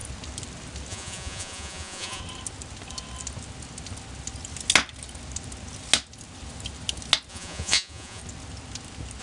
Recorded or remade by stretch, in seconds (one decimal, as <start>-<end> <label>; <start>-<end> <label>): 0.0-0.9 recorded; 0.9-2.2 remade; 2.2-7.3 recorded; 7.3-8.2 remade; 8.2-9.2 recorded